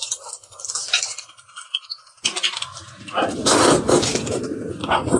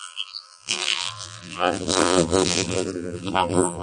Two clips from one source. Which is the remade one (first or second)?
second